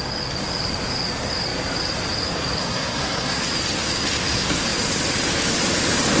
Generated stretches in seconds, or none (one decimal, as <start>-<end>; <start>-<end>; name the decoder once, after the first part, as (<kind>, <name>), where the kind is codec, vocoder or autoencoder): 2.6-3.4 (codec, SNAC)